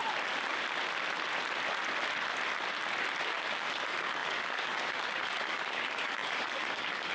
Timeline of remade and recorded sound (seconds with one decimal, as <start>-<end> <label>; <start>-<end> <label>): 0.0-3.2 recorded; 3.2-7.1 remade